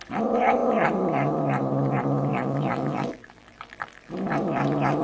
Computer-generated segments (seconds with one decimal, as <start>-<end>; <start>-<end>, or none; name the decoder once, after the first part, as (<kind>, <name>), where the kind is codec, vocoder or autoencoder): 2.3-4.1 (vocoder, BigVGAN v2)